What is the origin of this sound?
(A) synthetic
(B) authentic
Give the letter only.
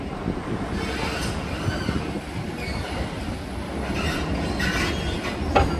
B